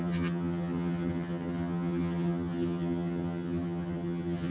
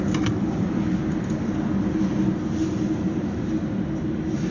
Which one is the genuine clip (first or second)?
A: second